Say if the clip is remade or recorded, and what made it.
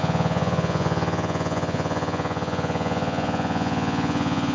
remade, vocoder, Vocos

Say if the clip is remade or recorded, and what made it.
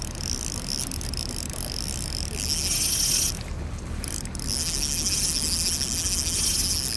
recorded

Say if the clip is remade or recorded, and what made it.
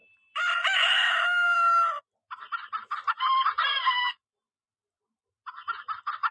recorded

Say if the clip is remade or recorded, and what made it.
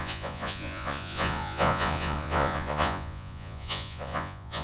remade, vocoder, Vocos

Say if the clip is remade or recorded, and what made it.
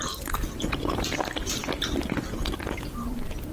recorded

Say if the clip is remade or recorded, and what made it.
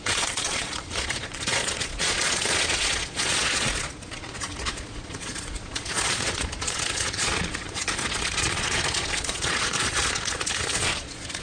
remade, vocoder, Vocos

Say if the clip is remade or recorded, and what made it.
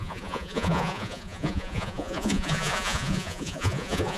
remade, vocoder, Vocos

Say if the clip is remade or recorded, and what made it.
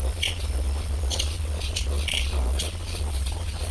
remade, vocoder, Vocos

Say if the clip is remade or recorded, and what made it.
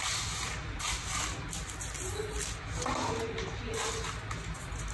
recorded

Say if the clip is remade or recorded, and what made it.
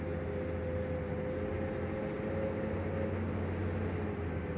recorded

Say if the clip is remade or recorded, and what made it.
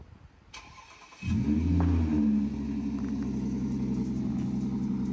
recorded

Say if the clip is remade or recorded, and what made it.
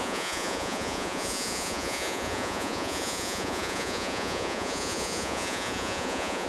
remade, vocoder, Vocos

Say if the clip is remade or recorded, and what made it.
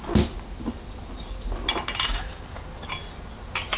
recorded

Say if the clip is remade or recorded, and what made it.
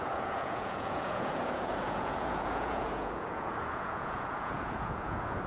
remade, vocoder, Vocos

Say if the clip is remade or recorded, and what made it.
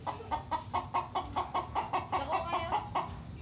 recorded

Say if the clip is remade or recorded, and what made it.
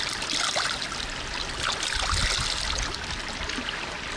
recorded